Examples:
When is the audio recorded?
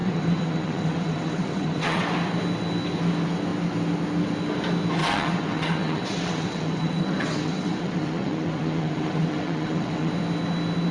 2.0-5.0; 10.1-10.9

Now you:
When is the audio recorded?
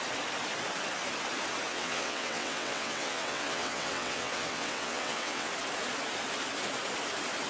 0.0-1.7; 5.5-7.5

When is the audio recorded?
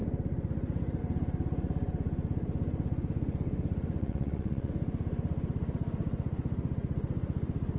0.0-4.0; 4.7-7.8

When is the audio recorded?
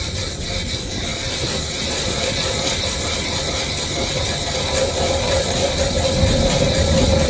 0.0-7.3